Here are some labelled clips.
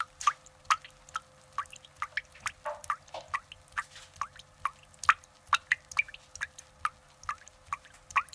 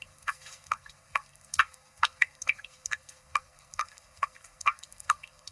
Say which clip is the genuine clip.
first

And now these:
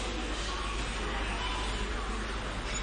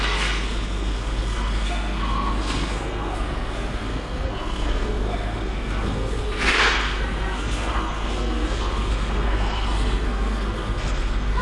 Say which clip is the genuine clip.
first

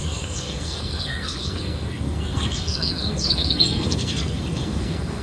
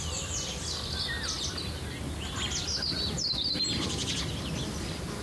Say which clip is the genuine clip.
second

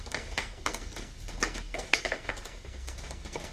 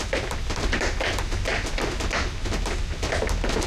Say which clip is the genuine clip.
second